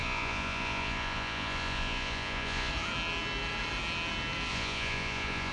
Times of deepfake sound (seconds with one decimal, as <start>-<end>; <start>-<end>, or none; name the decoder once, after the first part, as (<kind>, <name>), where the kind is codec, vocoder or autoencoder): 0.0-2.7 (vocoder, Vocos); 4.5-5.5